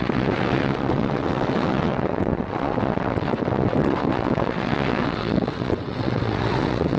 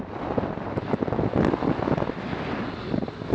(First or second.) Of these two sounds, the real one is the second